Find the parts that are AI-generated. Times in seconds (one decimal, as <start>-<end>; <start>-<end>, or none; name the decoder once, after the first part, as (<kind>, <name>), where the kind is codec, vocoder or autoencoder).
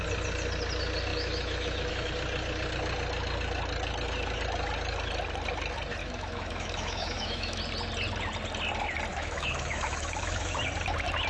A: 1.1-2.1 (autoencoder, DAC-VAE); 6.0-7.6; 9.1-10.6